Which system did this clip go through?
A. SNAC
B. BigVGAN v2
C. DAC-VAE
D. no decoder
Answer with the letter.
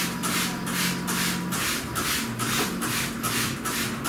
D